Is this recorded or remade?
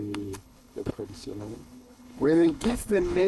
remade